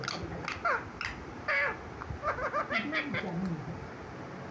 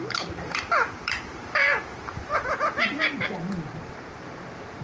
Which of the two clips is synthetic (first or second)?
second